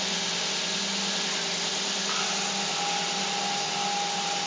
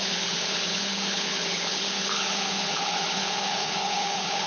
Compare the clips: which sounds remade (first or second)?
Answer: second